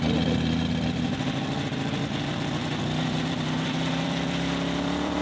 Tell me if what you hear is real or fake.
fake